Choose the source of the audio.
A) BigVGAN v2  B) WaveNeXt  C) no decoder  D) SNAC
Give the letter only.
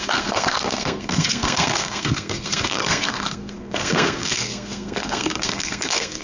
D